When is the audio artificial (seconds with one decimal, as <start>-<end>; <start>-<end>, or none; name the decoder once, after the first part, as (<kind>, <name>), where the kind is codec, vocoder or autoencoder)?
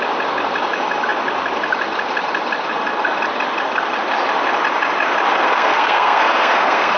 5.3-7.0 (codec, SNAC)